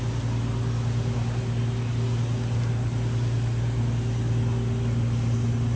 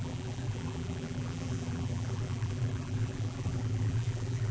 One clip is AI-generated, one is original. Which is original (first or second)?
first